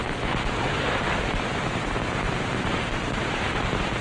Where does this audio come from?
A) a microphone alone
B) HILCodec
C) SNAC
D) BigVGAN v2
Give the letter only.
D